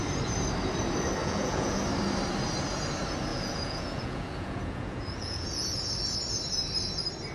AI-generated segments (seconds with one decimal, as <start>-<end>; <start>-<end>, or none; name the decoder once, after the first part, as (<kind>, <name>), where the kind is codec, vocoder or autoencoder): 1.2-1.8 (vocoder, Vocos); 3.3-5.9